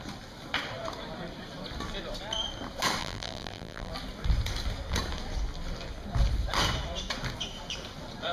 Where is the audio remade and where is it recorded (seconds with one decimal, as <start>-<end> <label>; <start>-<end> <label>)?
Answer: 0.0-3.0 recorded; 3.0-3.9 remade; 3.9-8.3 recorded

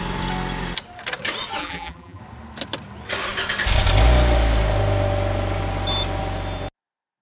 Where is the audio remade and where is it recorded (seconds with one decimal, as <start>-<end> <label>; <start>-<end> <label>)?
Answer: 0.0-1.6 recorded; 1.6-2.2 remade; 2.2-7.2 recorded

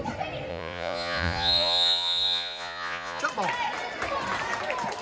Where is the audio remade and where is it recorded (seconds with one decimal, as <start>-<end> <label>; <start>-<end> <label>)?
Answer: 0.0-0.5 recorded; 0.5-3.2 remade; 3.2-5.0 recorded

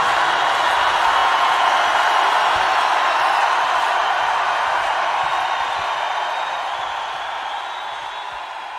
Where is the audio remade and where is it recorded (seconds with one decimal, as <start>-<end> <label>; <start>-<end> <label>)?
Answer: 0.0-1.2 recorded; 1.2-1.7 remade; 1.7-8.8 recorded

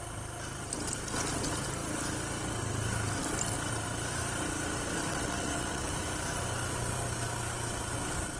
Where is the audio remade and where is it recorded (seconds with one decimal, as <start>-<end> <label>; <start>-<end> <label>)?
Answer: 0.0-5.1 recorded; 5.1-5.9 remade; 5.9-8.4 recorded